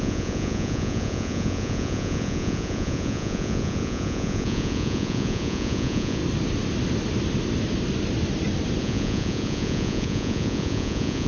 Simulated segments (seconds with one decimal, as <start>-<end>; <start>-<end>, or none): 0.0-6.2; 8.8-11.3